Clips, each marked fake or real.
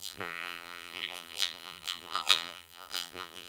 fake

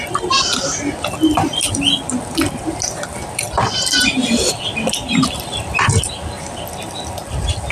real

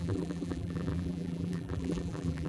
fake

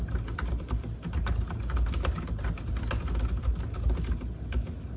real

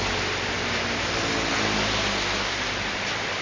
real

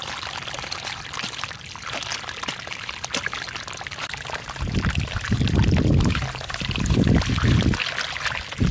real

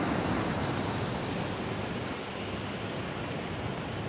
real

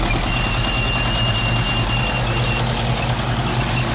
real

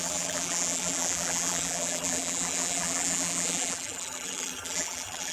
fake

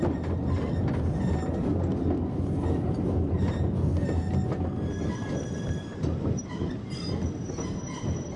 real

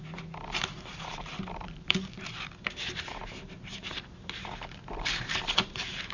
fake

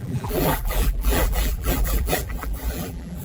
fake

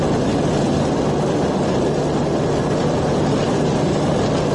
real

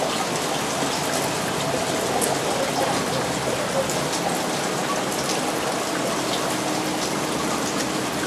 real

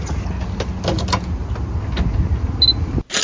real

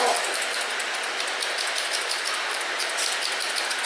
real